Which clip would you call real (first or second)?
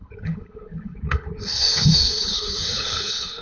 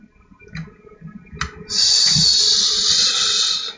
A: second